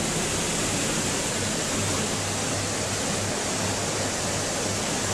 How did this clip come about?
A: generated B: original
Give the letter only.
B